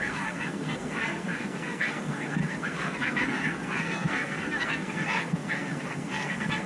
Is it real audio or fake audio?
fake